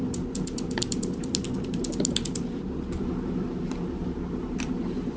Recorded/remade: recorded